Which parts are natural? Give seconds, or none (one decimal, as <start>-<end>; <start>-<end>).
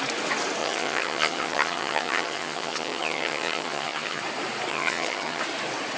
0.0-0.6; 4.2-4.7; 5.4-6.0